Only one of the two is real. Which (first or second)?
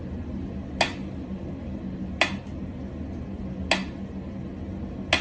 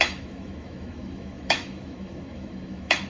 first